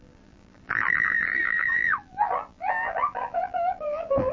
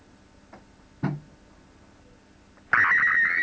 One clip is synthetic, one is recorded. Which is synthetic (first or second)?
first